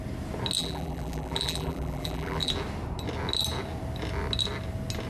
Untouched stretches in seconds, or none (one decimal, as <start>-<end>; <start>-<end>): 0.0-0.6; 2.5-5.1